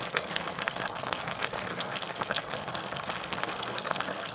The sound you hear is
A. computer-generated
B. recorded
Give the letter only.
A